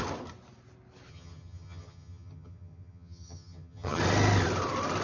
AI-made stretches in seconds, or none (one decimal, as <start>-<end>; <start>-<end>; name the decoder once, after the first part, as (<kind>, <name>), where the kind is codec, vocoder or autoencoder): 1.1-4.0 (vocoder, HiFi-GAN)

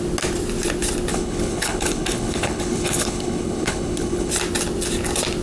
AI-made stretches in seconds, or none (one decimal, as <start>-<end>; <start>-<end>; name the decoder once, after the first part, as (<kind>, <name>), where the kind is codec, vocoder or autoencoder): 1.1-4.3 (codec, HILCodec)

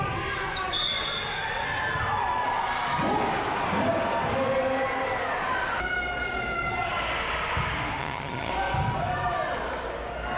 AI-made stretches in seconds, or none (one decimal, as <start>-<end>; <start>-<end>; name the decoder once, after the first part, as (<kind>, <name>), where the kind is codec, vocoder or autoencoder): 8.0-8.5 (vocoder, HiFi-GAN)